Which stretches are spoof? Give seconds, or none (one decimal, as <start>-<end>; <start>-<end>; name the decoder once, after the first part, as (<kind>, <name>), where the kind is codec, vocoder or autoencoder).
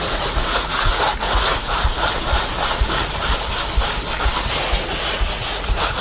0.0-1.5 (vocoder, Vocos); 4.6-6.0